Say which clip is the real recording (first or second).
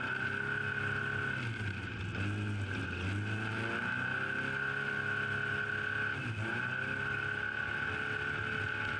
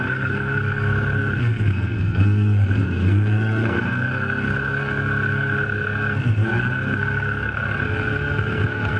first